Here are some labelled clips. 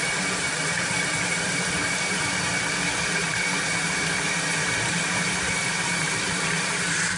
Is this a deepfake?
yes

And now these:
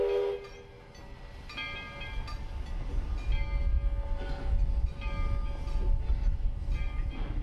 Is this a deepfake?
no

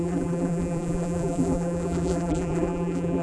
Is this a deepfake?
yes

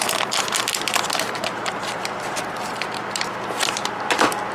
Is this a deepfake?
yes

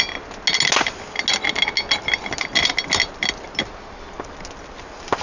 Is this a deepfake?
no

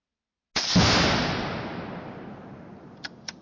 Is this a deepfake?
no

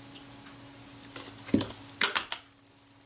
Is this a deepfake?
no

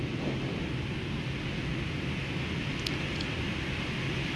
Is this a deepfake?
yes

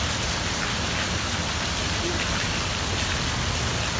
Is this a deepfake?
no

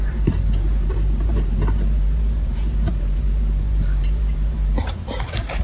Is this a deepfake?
yes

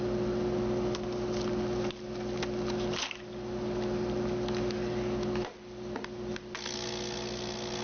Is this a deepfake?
no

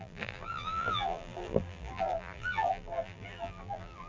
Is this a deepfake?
yes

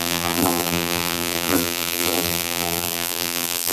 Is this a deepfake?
yes